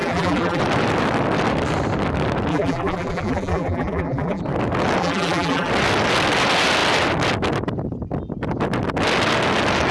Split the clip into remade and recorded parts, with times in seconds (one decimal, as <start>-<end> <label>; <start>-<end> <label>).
0.0-0.6 remade; 0.6-2.5 recorded; 2.5-4.4 remade; 4.4-5.0 recorded; 5.0-5.7 remade; 5.7-9.9 recorded